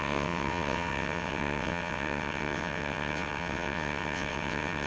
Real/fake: fake